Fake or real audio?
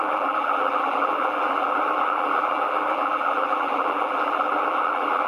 fake